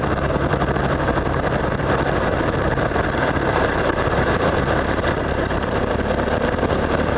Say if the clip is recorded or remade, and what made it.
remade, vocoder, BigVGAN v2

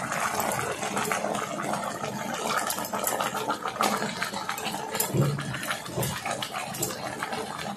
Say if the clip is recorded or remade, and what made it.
recorded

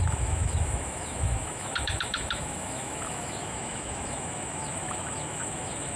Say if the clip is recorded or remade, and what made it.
remade, autoencoder, DAC-VAE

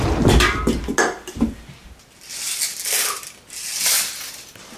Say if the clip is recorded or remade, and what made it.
recorded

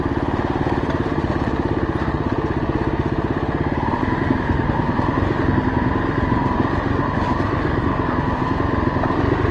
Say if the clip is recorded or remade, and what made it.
remade, vocoder, BigVGAN v2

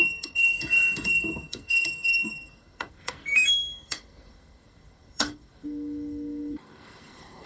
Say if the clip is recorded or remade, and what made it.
remade, codec, SNAC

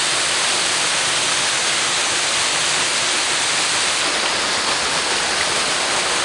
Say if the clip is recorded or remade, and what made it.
recorded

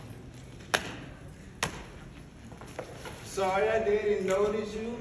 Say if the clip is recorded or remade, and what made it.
recorded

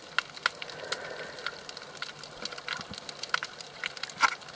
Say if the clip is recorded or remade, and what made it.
recorded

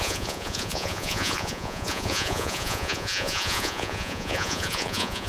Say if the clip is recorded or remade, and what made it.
remade, vocoder, Vocos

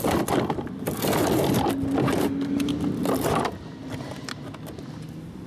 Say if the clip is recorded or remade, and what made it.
recorded